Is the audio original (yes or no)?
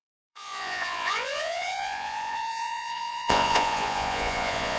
no